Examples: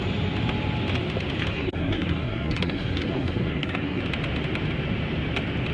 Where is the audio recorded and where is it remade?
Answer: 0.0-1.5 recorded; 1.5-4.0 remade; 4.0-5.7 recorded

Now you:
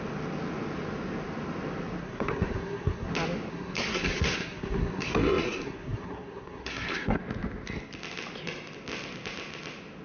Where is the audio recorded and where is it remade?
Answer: 0.0-2.0 recorded; 2.0-3.1 remade; 3.1-3.5 recorded; 3.5-7.2 remade; 7.2-10.0 recorded

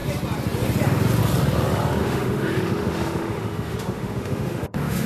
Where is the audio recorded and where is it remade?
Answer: 0.0-2.0 recorded; 2.0-5.1 remade

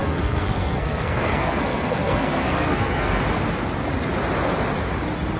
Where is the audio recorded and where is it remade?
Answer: 0.0-3.2 remade; 3.2-5.4 recorded

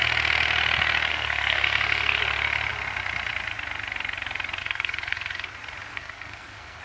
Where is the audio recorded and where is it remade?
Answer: 0.0-1.1 recorded; 1.1-2.2 remade; 2.2-4.6 recorded; 4.6-5.5 remade; 5.5-5.9 recorded; 5.9-6.8 remade

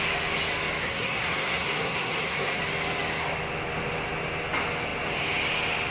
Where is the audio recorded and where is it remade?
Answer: 0.0-0.8 recorded; 0.8-2.6 remade; 2.6-5.9 recorded